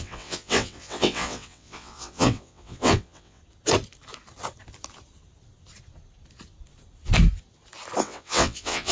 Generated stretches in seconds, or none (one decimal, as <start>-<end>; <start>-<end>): 0.0-3.4; 8.0-8.9